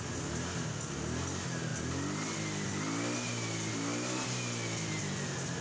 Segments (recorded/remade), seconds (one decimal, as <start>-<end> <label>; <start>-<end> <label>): 0.0-5.6 recorded